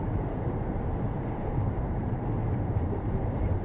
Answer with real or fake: fake